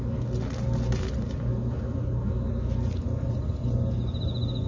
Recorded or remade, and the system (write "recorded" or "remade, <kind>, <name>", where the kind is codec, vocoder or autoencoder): recorded